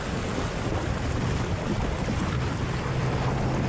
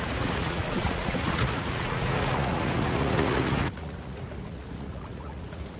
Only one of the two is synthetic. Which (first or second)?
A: second